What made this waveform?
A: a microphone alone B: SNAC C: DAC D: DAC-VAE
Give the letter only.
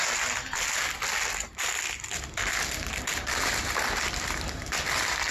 A